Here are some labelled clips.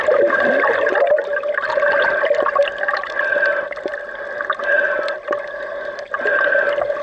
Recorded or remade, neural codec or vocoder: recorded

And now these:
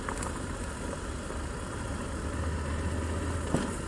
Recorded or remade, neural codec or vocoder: recorded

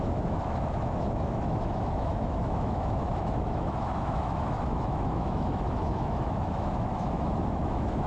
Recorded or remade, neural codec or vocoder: remade, autoencoder, DAC-VAE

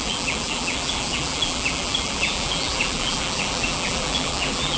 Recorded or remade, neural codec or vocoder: remade, vocoder, BigVGAN v2